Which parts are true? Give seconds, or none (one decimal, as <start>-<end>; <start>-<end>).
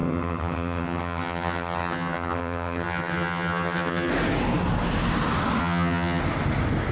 4.1-5.6; 6.2-6.9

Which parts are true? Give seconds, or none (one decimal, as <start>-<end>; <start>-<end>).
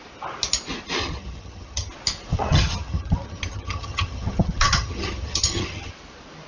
0.0-1.0; 1.9-2.3; 5.9-6.5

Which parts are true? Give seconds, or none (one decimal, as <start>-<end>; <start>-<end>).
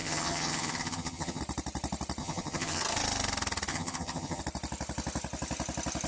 1.4-2.2; 2.8-3.7; 4.4-6.1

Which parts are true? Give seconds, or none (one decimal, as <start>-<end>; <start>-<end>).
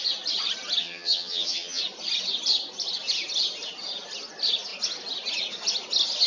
0.0-0.8; 1.8-6.3